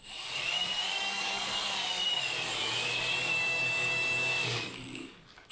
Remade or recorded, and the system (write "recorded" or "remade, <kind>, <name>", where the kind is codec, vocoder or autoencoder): remade, codec, DAC